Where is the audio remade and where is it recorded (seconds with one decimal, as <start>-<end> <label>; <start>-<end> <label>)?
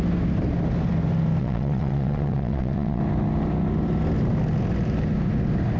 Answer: 0.0-1.4 recorded; 1.4-3.0 remade; 3.0-5.8 recorded